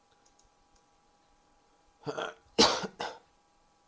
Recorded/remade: remade